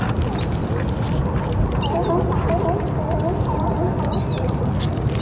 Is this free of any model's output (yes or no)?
yes